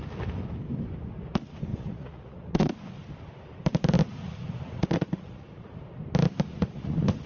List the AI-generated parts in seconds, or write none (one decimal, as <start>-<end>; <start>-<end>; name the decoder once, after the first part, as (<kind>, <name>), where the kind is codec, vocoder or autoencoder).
1.7-2.7 (vocoder, Vocos); 4.2-5.7; 6.5-7.3